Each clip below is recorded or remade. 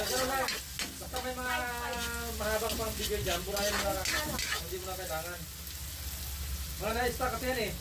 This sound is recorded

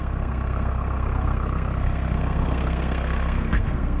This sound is remade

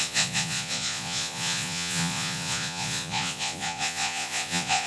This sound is remade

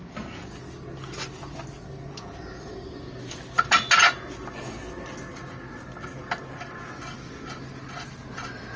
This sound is recorded